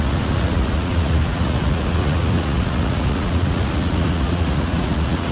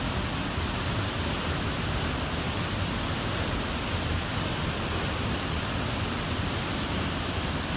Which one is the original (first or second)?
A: second